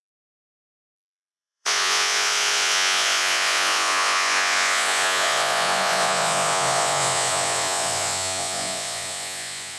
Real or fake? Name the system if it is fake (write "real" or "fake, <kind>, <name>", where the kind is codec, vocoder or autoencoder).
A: fake, vocoder, Vocos